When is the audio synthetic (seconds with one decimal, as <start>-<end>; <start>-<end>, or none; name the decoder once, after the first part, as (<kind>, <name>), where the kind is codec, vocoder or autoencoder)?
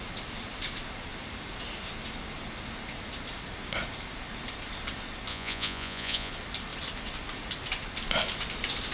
5.3-6.3 (vocoder, Vocos)